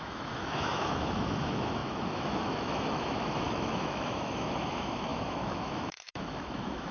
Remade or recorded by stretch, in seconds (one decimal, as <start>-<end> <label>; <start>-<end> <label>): 0.0-6.9 remade